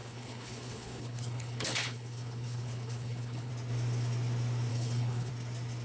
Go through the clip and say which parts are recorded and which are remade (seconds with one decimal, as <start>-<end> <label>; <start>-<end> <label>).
0.0-3.5 remade; 3.5-4.7 recorded; 4.7-5.3 remade; 5.3-5.8 recorded